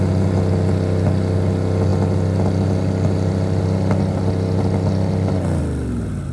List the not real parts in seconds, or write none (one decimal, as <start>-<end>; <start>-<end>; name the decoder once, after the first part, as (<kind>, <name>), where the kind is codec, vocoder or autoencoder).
none